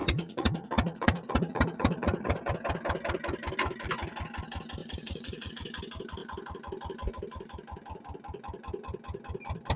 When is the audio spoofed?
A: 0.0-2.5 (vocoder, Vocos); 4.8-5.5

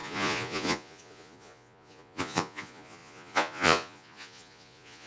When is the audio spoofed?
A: 0.0-5.1 (vocoder, Vocos)